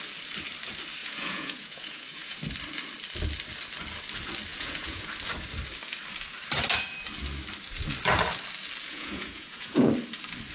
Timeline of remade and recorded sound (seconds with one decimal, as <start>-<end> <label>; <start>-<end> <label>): 0.0-1.0 recorded; 1.0-2.4 remade; 2.4-4.5 recorded; 4.5-5.1 remade; 5.1-8.8 recorded; 8.8-9.9 remade; 9.9-10.5 recorded